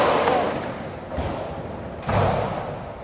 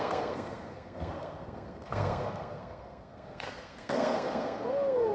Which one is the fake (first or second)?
second